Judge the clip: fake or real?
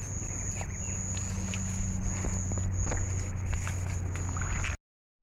real